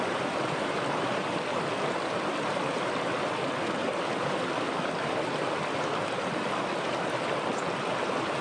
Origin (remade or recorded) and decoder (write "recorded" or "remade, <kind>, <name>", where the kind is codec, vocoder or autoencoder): recorded